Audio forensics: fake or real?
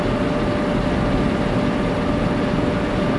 real